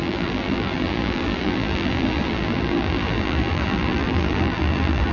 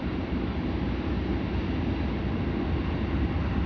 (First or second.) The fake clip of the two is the first